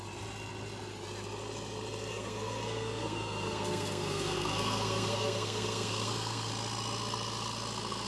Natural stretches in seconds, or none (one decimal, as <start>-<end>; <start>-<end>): 0.0-2.1; 6.5-8.1